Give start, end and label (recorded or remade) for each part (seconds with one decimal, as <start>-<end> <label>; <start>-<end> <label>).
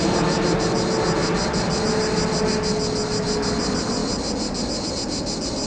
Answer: 0.0-5.7 recorded